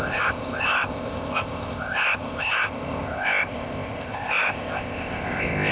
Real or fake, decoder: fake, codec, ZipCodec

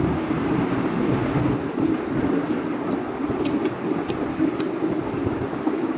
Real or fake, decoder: real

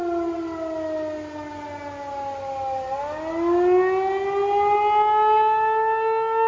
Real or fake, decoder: real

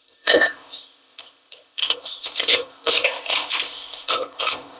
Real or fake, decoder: fake, codec, ZipCodec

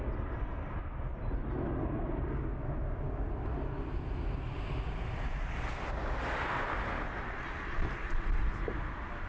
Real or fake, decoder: real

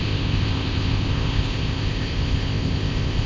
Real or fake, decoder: fake, codec, ZipCodec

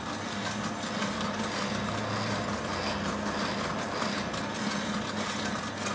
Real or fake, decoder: real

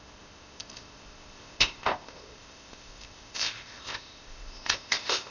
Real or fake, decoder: fake, codec, ZipCodec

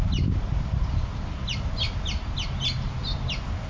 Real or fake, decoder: real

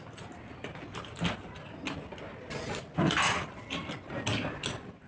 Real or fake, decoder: real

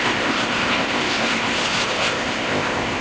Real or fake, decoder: fake, codec, ZipCodec